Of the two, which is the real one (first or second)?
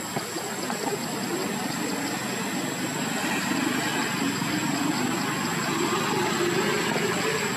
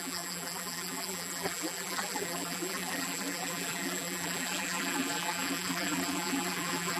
first